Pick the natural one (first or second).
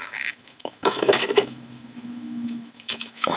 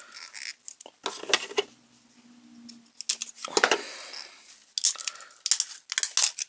second